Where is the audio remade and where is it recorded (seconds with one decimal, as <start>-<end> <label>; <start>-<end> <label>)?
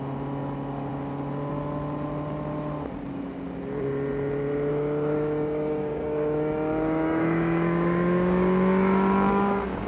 0.0-4.7 recorded; 4.7-9.9 remade